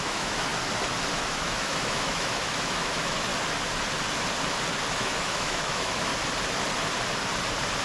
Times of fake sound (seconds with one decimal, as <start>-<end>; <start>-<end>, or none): 0.0-0.5; 1.1-3.3; 4.9-6.1

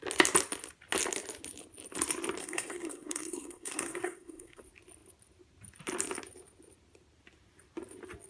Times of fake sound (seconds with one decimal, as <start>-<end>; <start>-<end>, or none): 2.4-4.6

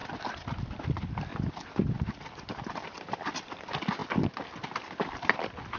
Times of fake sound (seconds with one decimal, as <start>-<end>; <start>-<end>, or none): 0.8-5.8

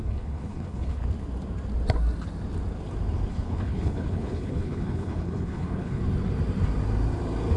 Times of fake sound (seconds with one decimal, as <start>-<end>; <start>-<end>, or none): 0.0-1.0; 3.3-6.0

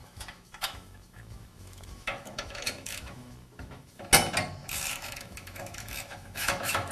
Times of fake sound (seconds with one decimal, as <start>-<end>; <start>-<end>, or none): 0.0-4.1; 4.6-6.9

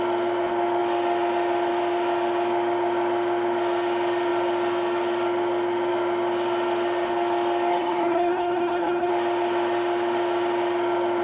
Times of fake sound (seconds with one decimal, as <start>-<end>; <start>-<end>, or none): 7.7-9.1

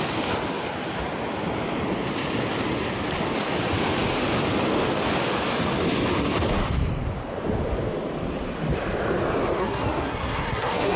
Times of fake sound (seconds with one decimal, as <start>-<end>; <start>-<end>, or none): 9.6-11.0